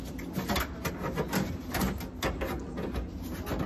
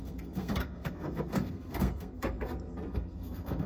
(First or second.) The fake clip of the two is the second